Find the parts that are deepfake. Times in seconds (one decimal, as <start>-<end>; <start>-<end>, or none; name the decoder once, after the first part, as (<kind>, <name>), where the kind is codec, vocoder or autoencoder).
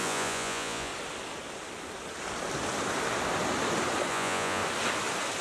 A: 0.0-0.9 (vocoder, Vocos); 4.1-4.6